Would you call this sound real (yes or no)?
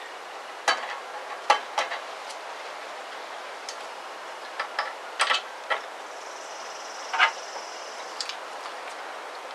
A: yes